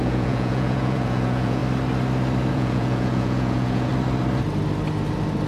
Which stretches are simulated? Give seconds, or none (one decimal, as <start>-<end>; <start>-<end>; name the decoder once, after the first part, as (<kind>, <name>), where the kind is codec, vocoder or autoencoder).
0.0-1.6 (vocoder, Vocos); 2.5-3.9